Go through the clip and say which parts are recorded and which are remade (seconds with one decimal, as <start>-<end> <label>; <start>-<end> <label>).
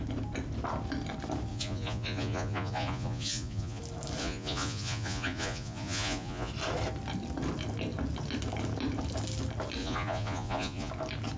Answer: 0.0-1.5 recorded; 1.5-3.8 remade; 3.8-4.2 recorded; 4.2-6.5 remade; 6.5-9.8 recorded; 9.8-10.9 remade; 10.9-11.4 recorded